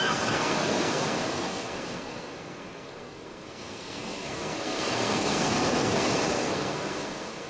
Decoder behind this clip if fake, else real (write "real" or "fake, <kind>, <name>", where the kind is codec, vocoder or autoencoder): fake, codec, SNAC